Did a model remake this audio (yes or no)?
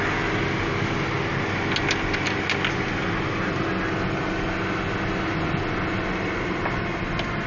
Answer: no